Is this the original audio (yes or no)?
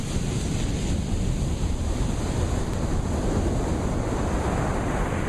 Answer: yes